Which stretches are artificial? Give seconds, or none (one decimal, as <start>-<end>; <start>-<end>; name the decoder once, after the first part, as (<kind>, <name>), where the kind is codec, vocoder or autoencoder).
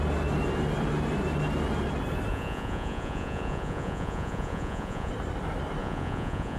2.3-5.1 (vocoder, Vocos); 5.8-6.6